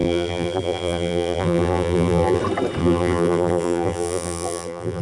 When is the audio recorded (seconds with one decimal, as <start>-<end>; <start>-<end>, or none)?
2.4-2.8